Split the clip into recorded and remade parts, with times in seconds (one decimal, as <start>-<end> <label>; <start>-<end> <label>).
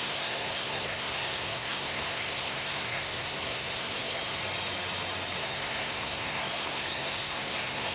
0.0-4.4 remade; 4.4-5.4 recorded; 5.4-7.9 remade